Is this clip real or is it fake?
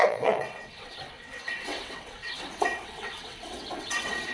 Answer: fake